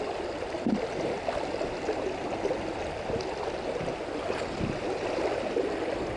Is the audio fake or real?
real